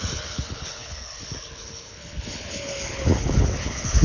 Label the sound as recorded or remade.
remade